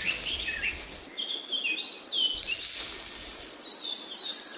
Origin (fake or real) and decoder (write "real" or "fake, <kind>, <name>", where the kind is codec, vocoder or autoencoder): real